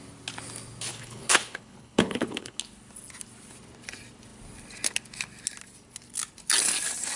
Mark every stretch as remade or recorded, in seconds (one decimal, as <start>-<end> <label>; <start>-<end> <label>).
0.0-0.9 recorded; 0.9-2.6 remade; 2.6-7.2 recorded